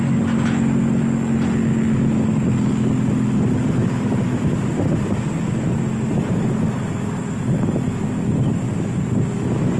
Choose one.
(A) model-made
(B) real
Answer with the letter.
B